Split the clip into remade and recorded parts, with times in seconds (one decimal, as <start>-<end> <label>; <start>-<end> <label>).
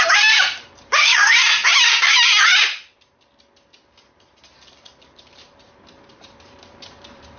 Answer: 0.0-1.6 remade; 1.6-5.0 recorded; 5.0-7.4 remade